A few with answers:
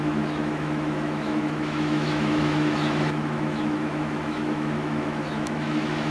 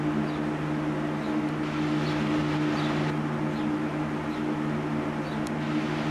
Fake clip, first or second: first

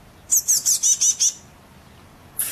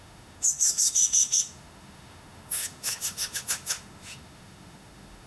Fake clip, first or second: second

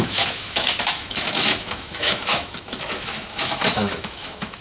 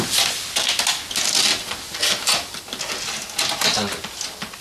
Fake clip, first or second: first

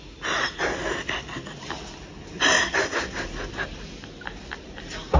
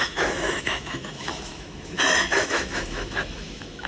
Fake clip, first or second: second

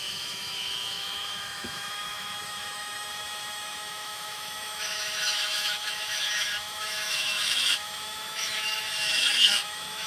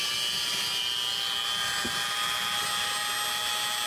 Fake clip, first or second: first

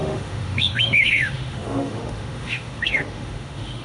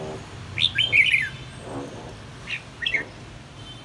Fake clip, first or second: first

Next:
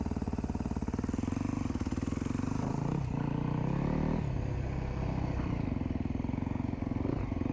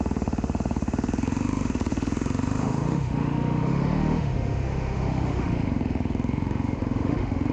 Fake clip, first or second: second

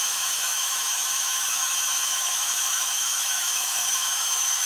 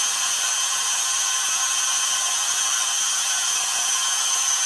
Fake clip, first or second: first